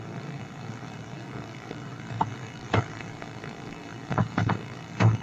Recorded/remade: remade